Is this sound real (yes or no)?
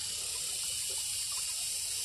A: yes